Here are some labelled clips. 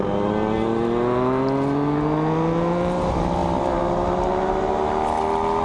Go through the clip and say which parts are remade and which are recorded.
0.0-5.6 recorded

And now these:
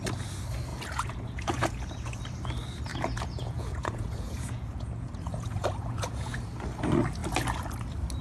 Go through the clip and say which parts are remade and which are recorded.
0.0-0.7 recorded; 0.7-2.2 remade; 2.2-2.9 recorded; 2.9-6.4 remade; 6.4-8.2 recorded

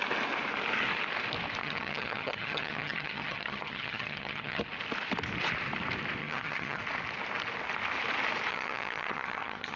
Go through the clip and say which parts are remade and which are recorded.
0.0-1.6 recorded; 1.6-4.6 remade; 4.6-6.2 recorded; 6.2-6.8 remade; 6.8-8.5 recorded; 8.5-9.8 remade

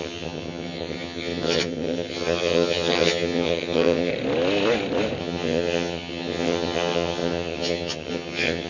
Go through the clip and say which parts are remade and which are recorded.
0.0-4.1 remade; 4.1-5.2 recorded; 5.2-8.7 remade